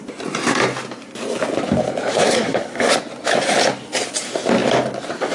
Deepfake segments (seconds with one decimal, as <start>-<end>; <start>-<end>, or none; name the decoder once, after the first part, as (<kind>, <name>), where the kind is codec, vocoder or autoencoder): 2.1-2.9 (codec, SNAC)